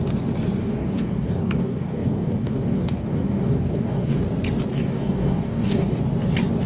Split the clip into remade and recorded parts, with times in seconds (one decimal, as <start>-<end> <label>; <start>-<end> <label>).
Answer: 0.0-0.6 recorded; 0.6-4.2 remade; 4.2-4.7 recorded; 4.7-6.0 remade; 6.0-6.7 recorded